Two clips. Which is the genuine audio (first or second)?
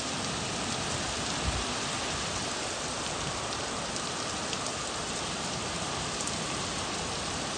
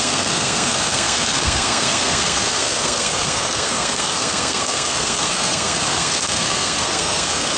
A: first